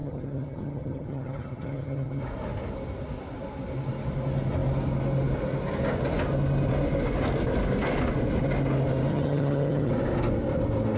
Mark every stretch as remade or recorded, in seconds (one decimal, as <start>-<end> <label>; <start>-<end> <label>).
0.0-2.2 remade; 2.2-9.1 recorded; 9.1-9.9 remade; 9.9-11.0 recorded

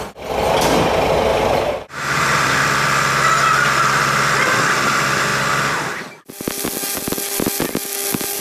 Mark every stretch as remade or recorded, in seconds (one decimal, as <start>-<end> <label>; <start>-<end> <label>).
0.0-1.3 recorded; 1.3-2.5 remade; 2.5-8.4 recorded

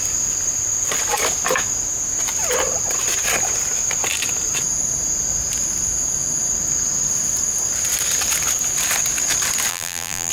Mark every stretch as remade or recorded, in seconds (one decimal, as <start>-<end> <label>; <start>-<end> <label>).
0.0-9.7 recorded; 9.7-10.3 remade

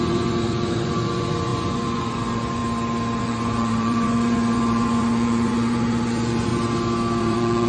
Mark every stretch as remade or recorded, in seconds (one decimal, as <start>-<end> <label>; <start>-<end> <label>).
0.0-2.6 remade; 2.6-3.2 recorded; 3.2-6.5 remade; 6.5-7.2 recorded; 7.2-7.7 remade

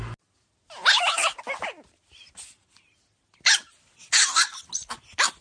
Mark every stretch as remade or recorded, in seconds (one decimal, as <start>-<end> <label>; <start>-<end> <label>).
0.0-5.4 recorded

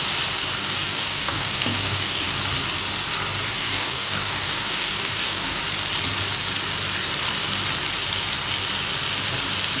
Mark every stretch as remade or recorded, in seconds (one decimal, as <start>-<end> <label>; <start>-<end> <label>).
0.0-0.6 recorded; 0.6-2.4 remade; 2.4-3.5 recorded; 3.5-5.6 remade; 5.6-9.8 recorded